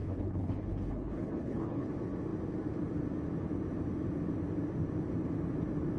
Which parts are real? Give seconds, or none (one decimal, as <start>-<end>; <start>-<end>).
1.9-6.0